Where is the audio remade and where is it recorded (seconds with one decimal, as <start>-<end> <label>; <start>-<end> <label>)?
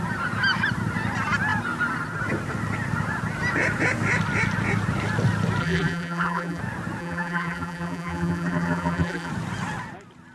0.0-5.6 recorded; 5.6-6.6 remade; 6.6-7.0 recorded; 7.0-9.3 remade; 9.3-10.3 recorded